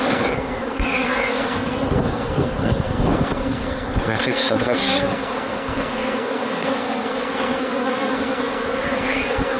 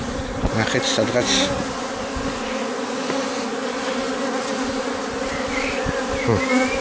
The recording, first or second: second